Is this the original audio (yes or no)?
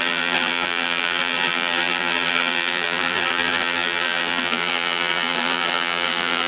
no